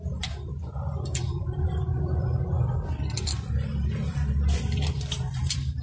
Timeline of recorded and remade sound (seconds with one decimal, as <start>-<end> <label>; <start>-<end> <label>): 0.0-2.4 remade; 2.4-4.9 recorded; 4.9-5.8 remade